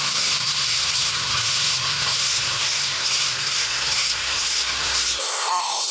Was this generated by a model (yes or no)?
yes